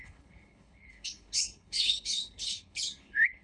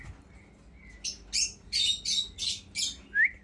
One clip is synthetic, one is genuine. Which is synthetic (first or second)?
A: first